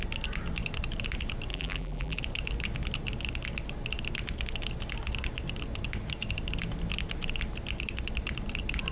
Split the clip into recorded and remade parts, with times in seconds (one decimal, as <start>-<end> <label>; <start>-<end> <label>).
0.0-1.5 recorded; 1.5-2.2 remade; 2.2-8.9 recorded